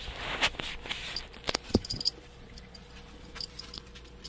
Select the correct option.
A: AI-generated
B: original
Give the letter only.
A